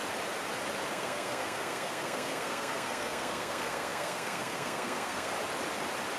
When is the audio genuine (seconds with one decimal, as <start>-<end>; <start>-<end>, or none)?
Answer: 0.0-0.9; 5.3-6.2